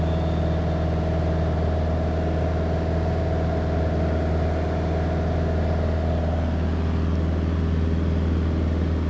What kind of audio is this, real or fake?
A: real